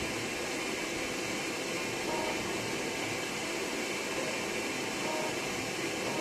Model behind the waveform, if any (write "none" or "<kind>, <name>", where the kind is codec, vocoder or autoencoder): none